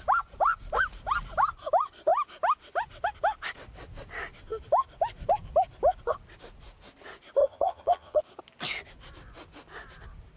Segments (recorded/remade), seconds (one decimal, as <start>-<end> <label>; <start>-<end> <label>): 0.0-7.4 recorded; 7.4-8.2 remade; 8.2-10.4 recorded